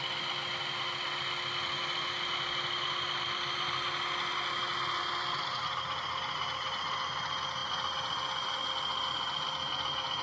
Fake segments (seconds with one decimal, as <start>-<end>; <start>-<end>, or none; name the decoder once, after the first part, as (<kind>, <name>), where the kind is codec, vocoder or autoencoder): none